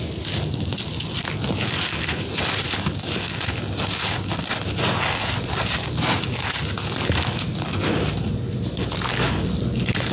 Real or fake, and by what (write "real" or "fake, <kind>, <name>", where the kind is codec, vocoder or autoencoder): real